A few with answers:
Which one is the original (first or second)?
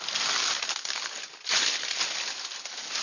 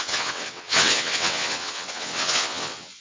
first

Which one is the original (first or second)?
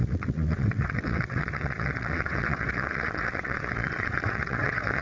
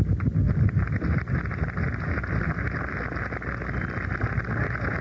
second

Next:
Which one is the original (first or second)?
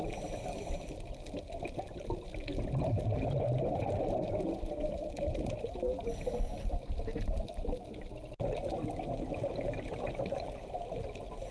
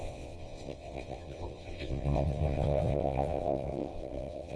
first